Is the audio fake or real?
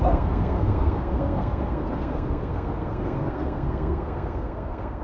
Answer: fake